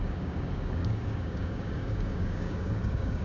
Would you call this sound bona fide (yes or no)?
no